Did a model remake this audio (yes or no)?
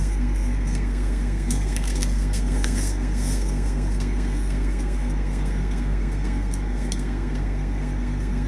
yes